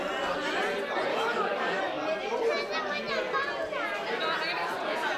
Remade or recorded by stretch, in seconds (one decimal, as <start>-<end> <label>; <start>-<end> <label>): 0.0-1.1 recorded; 1.1-1.8 remade; 1.8-5.2 recorded